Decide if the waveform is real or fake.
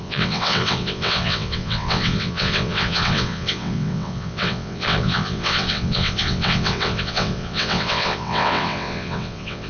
fake